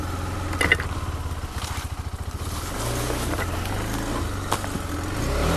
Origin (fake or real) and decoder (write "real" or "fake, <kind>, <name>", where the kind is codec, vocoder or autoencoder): real